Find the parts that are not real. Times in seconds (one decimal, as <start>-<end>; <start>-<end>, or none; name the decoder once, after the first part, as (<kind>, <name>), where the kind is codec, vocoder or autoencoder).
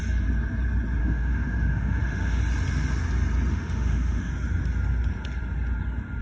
1.0-2.4 (autoencoder, DAC-VAE); 3.5-4.3